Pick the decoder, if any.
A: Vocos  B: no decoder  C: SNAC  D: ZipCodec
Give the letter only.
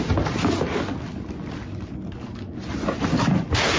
B